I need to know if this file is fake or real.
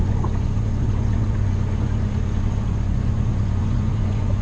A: fake